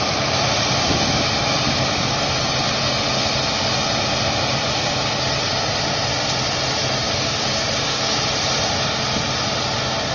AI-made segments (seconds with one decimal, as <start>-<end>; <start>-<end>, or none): 7.0-8.2